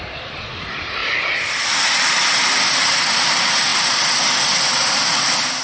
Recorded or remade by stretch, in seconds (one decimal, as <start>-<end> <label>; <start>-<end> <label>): 0.0-1.0 remade; 1.0-3.0 recorded; 3.0-5.6 remade